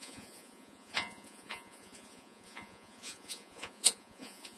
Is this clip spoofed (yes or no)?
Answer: yes